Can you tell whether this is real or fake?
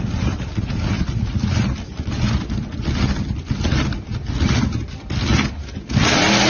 real